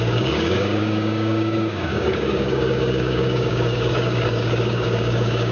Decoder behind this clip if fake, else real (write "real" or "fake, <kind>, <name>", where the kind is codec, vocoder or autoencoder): fake, codec, DAC